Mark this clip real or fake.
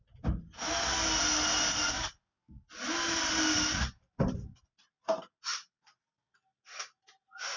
real